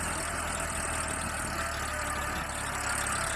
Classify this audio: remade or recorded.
recorded